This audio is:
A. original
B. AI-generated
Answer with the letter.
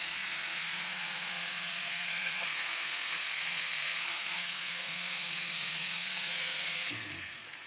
B